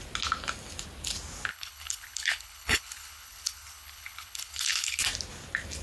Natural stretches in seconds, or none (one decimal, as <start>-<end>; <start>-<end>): 0.0-1.5; 5.0-5.8